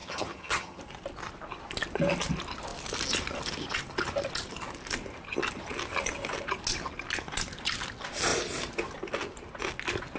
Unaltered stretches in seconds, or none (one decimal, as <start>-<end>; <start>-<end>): 0.8-10.2